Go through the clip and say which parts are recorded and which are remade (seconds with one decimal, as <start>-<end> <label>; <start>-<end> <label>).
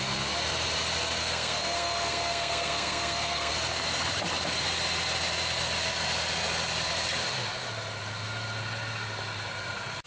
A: 0.0-1.2 recorded; 1.2-3.5 remade; 3.5-10.1 recorded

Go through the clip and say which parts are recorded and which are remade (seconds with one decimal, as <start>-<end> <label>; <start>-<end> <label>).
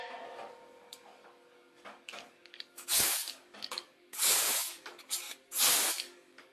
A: 0.0-6.5 remade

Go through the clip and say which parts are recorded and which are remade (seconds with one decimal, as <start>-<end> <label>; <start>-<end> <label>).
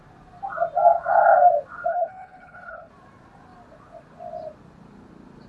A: 0.0-1.9 recorded; 1.9-2.9 remade; 2.9-5.5 recorded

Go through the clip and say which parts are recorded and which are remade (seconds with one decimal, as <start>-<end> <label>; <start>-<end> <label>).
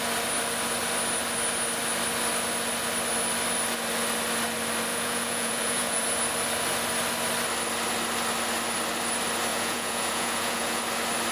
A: 0.0-4.9 recorded; 4.9-6.0 remade; 6.0-9.5 recorded; 9.5-10.8 remade; 10.8-11.3 recorded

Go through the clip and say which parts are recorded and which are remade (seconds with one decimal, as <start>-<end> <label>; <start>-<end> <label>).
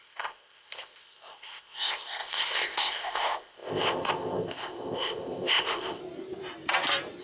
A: 0.0-6.0 remade; 6.0-7.2 recorded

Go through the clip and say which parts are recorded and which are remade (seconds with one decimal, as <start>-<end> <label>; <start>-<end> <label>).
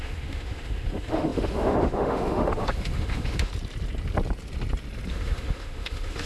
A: 0.0-3.5 remade; 3.5-5.1 recorded; 5.1-6.3 remade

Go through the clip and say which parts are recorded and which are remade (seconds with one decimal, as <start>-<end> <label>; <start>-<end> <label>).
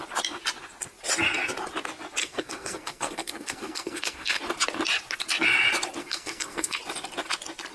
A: 0.0-2.2 recorded; 2.2-4.4 remade; 4.4-6.0 recorded; 6.0-6.8 remade; 6.8-7.7 recorded